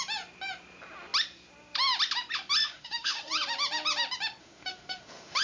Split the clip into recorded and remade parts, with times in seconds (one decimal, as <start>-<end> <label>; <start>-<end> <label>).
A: 0.0-2.6 recorded; 2.6-3.3 remade; 3.3-4.4 recorded; 4.4-5.4 remade

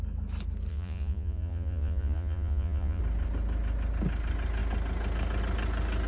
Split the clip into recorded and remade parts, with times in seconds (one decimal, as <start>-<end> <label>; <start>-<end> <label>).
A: 0.0-0.7 recorded; 0.7-3.0 remade; 3.0-6.1 recorded

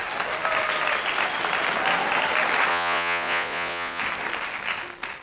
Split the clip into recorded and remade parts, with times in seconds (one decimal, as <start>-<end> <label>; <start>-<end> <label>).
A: 0.0-2.7 recorded; 2.7-4.0 remade; 4.0-5.2 recorded

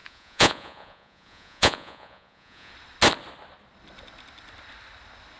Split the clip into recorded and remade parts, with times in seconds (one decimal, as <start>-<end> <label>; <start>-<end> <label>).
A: 0.0-2.7 remade; 2.7-5.4 recorded

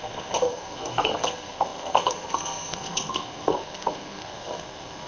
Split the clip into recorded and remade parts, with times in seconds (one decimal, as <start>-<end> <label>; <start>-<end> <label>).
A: 0.0-5.1 remade

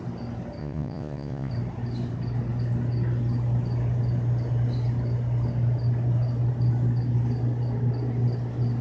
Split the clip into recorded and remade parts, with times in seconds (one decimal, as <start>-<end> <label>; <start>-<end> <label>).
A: 0.0-0.6 recorded; 0.6-1.5 remade; 1.5-8.8 recorded